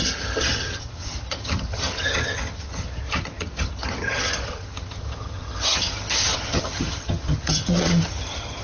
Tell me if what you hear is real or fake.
fake